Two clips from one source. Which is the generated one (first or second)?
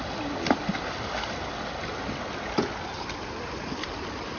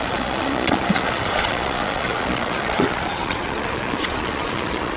second